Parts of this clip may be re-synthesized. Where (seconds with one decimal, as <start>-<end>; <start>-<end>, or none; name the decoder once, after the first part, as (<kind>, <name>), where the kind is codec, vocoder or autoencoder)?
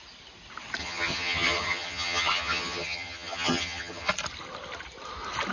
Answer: 0.8-4.1 (vocoder, HiFi-GAN)